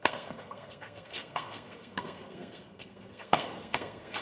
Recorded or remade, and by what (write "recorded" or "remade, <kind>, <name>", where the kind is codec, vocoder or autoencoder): remade, codec, SNAC